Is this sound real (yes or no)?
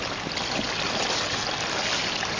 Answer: yes